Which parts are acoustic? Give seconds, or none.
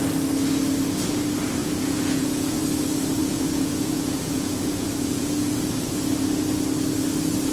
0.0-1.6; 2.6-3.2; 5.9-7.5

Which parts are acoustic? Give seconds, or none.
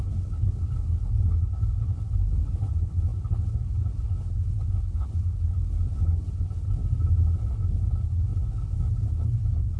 6.8-7.4